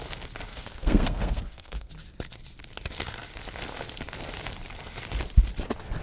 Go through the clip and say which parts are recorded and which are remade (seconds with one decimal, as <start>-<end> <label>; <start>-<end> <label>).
0.0-0.5 recorded; 0.5-1.9 remade; 1.9-6.0 recorded